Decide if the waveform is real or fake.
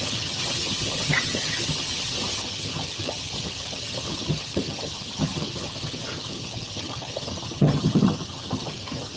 fake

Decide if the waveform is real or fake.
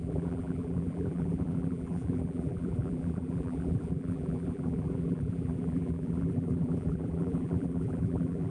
fake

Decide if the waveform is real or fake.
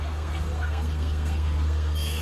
fake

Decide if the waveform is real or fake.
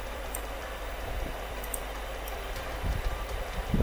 fake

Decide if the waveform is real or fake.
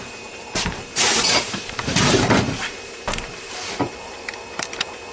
fake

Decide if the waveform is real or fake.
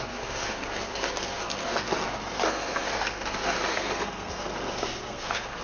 fake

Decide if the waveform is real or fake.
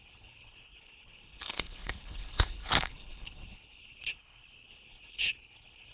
fake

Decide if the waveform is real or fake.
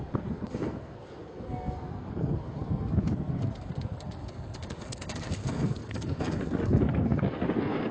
fake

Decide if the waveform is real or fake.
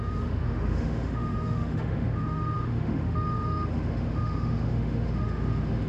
fake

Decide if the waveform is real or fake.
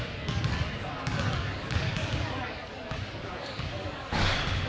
fake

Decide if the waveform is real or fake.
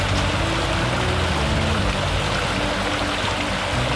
real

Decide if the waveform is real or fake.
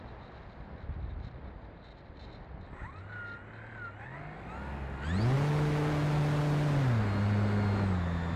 real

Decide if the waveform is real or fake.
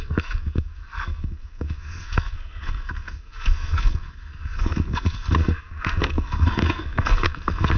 fake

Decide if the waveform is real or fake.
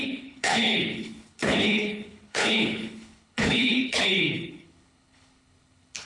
fake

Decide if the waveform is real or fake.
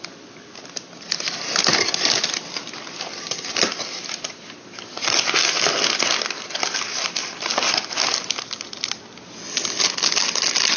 real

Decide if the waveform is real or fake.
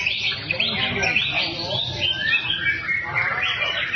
real